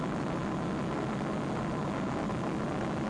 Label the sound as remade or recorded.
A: recorded